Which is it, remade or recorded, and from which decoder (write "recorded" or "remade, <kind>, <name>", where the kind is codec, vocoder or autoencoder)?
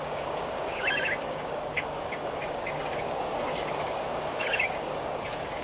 remade, codec, DAC